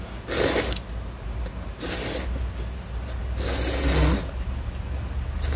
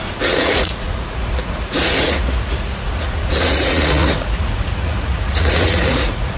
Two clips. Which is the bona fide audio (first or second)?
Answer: first